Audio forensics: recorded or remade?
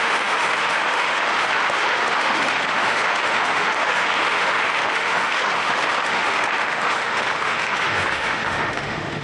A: remade